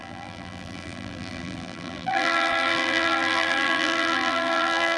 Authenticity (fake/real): fake